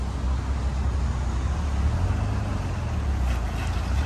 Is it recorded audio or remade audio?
recorded